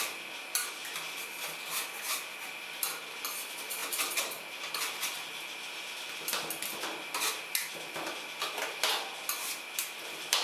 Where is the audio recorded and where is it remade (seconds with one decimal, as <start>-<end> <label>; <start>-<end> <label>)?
0.0-10.4 recorded